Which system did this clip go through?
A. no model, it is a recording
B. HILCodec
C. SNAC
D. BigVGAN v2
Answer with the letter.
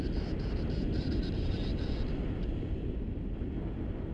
A